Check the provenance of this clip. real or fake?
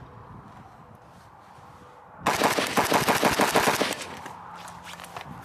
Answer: real